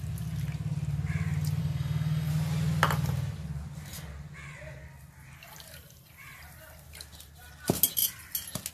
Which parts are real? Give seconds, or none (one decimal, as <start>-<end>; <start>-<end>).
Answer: 0.0-1.6; 2.3-8.7